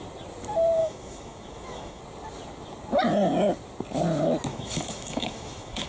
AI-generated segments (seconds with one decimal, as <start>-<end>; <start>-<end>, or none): 0.8-2.0; 4.5-5.9